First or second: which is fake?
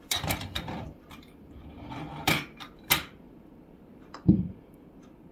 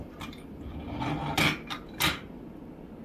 first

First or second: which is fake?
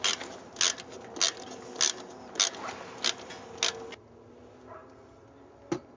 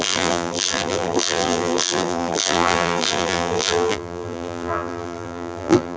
second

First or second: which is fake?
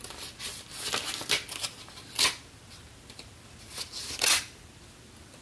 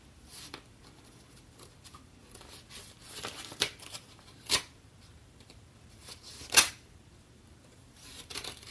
second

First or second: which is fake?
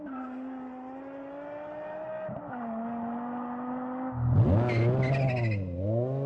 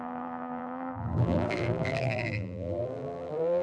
second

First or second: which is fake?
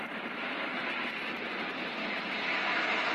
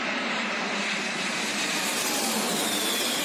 second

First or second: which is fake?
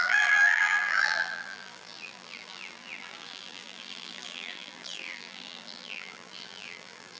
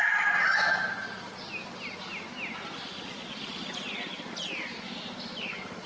first